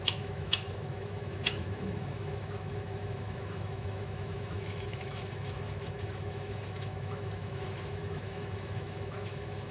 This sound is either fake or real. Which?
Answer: fake